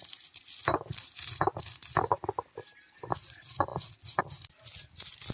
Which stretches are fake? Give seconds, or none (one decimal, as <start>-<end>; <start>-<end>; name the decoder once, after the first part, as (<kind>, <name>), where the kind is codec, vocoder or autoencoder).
none